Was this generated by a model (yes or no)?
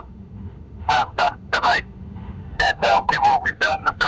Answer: yes